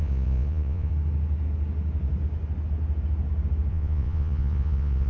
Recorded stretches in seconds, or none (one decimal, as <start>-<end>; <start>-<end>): 0.9-3.7